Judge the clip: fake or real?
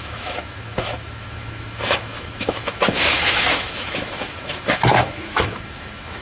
fake